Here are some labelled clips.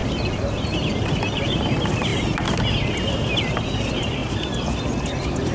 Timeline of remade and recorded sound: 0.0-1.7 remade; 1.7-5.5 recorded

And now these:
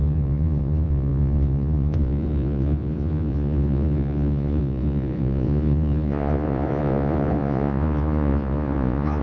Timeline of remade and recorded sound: 0.0-9.2 remade

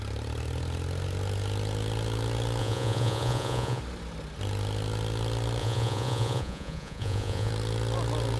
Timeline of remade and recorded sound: 0.0-2.6 recorded; 2.6-3.8 remade; 3.8-5.6 recorded; 5.6-7.5 remade; 7.5-8.4 recorded

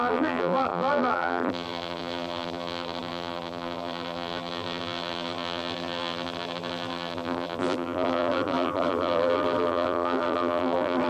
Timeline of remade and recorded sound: 0.0-11.1 remade

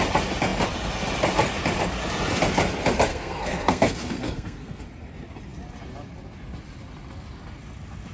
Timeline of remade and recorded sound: 0.0-3.1 recorded; 3.1-4.8 remade; 4.8-8.1 recorded

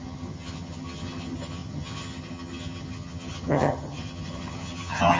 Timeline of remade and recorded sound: 0.0-5.2 remade